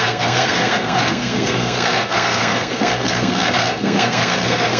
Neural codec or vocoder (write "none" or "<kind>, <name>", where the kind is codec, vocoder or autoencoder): codec, SNAC